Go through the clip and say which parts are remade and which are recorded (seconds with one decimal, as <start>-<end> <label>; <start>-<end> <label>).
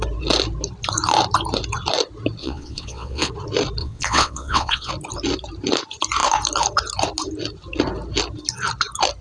0.0-2.4 recorded; 2.4-3.3 remade; 3.3-3.8 recorded; 3.8-4.9 remade; 4.9-9.2 recorded